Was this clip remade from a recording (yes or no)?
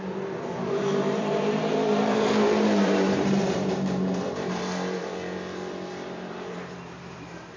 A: yes